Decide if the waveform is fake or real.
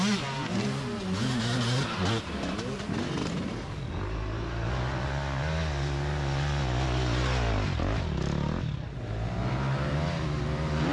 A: real